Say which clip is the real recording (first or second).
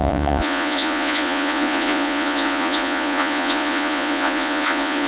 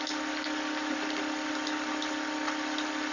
second